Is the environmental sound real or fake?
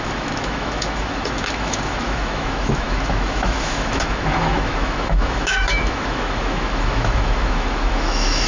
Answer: fake